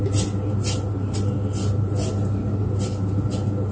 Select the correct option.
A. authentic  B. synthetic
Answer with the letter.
A